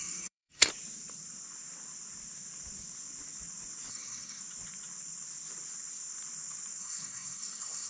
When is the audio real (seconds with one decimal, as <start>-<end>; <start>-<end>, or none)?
0.7-3.9; 4.4-6.8